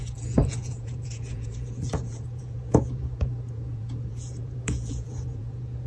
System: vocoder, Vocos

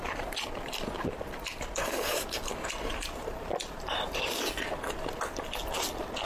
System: none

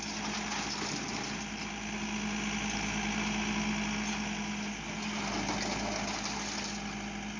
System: none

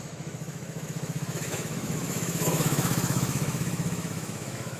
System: autoencoder, DAC-VAE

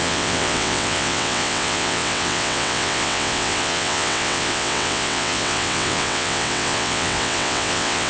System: vocoder, WaveNeXt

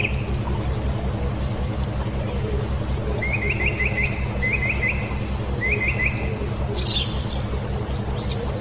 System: none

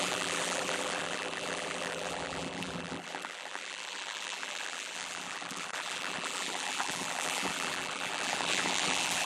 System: vocoder, BigVGAN v2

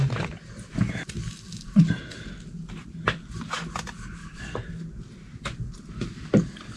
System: none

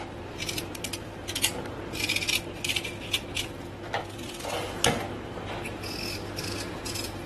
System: none